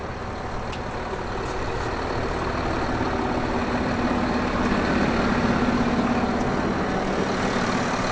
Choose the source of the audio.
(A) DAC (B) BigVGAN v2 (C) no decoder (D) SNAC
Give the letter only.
C